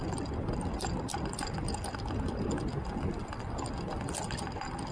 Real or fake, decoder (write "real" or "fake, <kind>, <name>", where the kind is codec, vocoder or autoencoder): real